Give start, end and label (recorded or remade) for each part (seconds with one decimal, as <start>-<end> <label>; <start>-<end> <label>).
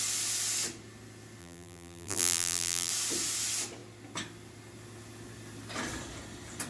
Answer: 0.0-1.4 recorded; 1.4-2.9 remade; 2.9-6.7 recorded